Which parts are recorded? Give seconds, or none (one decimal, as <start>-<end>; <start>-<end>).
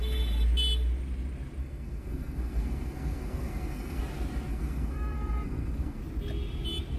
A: 0.0-1.6; 4.0-4.5; 6.0-7.0